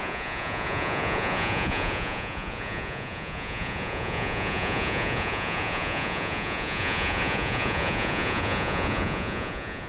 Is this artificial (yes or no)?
yes